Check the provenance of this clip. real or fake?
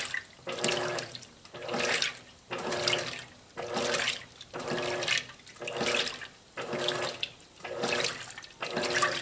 real